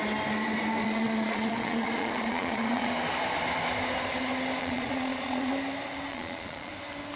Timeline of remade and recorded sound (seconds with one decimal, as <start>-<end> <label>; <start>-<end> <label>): 0.0-0.8 recorded; 0.8-2.9 remade; 2.9-4.6 recorded; 4.6-5.5 remade; 5.5-6.1 recorded; 6.1-6.7 remade; 6.7-7.2 recorded